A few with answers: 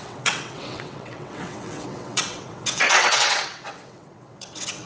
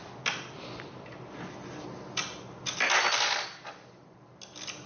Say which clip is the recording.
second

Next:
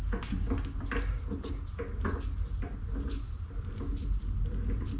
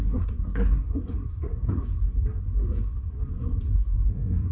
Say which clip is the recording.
first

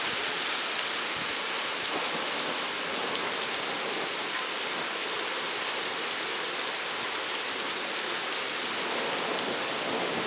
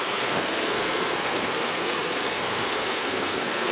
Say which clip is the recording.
first